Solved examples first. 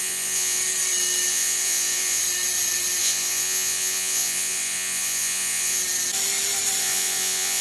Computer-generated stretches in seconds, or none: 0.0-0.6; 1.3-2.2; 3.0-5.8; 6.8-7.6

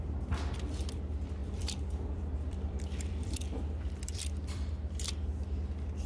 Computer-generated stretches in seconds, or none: 1.4-5.1

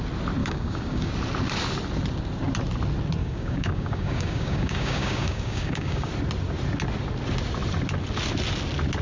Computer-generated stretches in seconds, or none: 0.4-1.1; 3.2-6.1

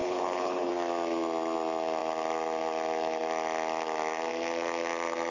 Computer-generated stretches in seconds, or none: 0.0-0.7

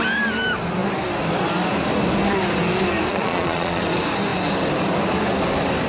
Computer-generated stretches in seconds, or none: 3.1-3.8